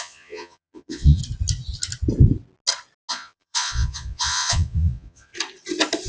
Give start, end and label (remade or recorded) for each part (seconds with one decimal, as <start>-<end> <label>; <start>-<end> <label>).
0.0-1.2 remade; 1.2-3.1 recorded; 3.1-5.3 remade; 5.3-6.1 recorded